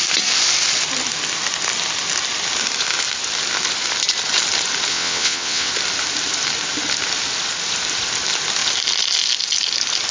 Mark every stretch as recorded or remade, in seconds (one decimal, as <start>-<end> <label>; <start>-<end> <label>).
0.0-4.9 recorded; 4.9-5.7 remade; 5.7-10.1 recorded